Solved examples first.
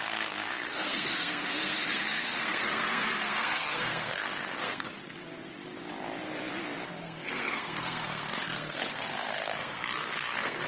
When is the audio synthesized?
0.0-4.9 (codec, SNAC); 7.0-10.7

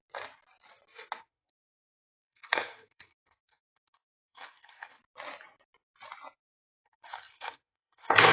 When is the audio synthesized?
1.2-5.0 (codec, SNAC); 6.4-8.3

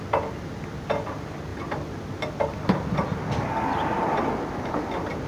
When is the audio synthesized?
none